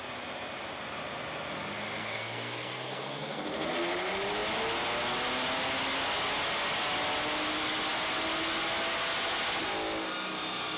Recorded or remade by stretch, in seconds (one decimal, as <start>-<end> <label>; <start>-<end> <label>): 0.0-2.0 recorded; 2.0-3.7 remade; 3.7-10.8 recorded